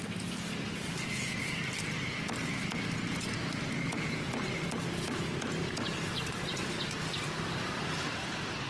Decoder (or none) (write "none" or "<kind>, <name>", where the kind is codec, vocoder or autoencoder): none